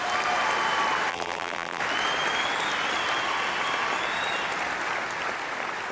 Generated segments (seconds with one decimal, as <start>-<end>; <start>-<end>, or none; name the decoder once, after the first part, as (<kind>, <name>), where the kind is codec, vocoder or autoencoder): 1.1-1.8 (vocoder, BigVGAN v2)